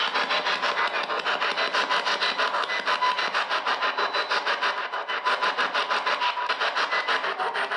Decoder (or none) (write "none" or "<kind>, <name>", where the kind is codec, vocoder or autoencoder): none